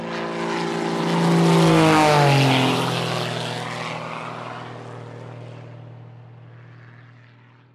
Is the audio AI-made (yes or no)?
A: no